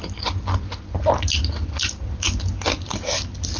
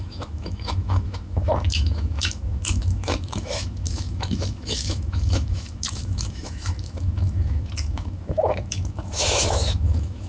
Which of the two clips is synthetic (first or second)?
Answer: second